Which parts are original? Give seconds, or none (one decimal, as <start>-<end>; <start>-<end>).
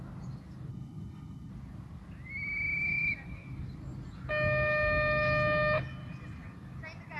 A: 0.0-0.7; 1.5-7.2